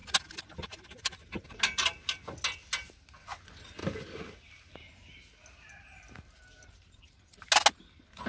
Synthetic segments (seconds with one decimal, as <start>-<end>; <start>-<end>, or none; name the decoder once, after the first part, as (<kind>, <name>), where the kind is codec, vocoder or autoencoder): none

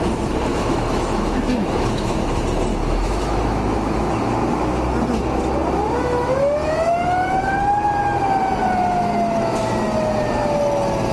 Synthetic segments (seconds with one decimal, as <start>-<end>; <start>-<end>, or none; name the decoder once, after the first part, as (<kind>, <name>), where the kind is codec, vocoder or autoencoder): 0.5-2.2 (autoencoder, DAC-VAE); 2.7-4.1

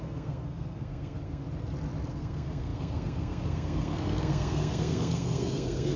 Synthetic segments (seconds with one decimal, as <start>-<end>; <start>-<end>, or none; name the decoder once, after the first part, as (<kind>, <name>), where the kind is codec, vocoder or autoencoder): 0.0-1.4 (codec, SNAC); 2.1-6.0